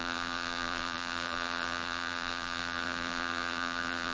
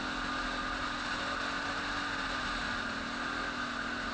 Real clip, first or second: second